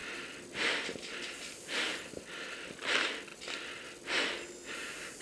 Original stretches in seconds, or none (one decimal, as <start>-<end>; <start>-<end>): 0.0-5.2